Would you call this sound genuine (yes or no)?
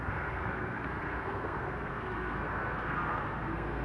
no